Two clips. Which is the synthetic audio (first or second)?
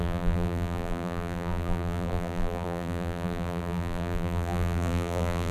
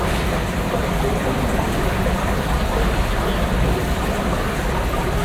first